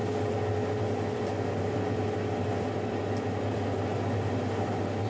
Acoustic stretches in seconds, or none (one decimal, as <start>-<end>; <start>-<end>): 0.0-5.1